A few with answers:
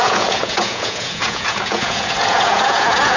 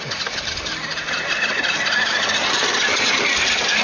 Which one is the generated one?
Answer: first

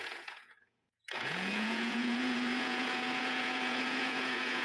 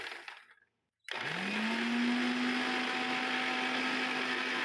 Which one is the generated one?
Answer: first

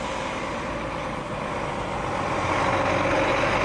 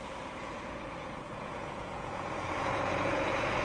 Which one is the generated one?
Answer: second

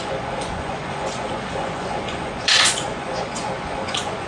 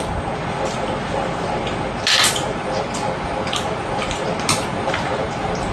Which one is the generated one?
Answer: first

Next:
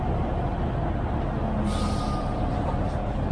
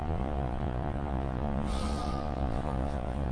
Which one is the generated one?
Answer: second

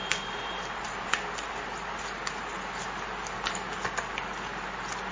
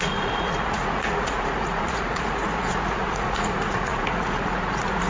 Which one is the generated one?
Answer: second